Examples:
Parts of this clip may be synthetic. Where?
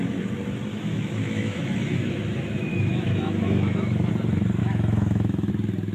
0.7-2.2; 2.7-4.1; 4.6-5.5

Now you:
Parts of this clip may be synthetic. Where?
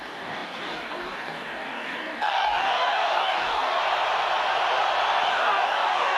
0.0-3.8; 5.3-6.2